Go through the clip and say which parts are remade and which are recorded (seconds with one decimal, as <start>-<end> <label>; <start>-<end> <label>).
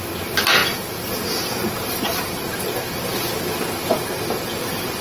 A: 0.0-5.0 recorded